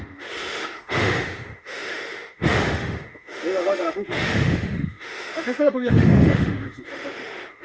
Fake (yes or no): yes